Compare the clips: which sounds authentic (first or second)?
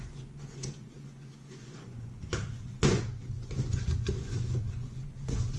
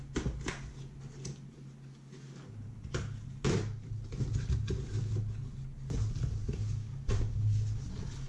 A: second